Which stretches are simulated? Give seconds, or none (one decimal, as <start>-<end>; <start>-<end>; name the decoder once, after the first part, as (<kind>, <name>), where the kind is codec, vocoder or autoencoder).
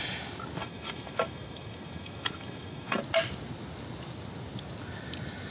0.6-3.0 (autoencoder, DAC-VAE)